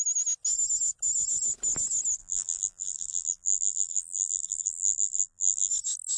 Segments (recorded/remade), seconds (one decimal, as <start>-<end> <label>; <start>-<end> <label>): 0.0-2.2 recorded; 2.2-5.7 remade; 5.7-6.2 recorded